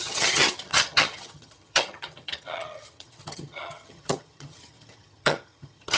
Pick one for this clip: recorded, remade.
remade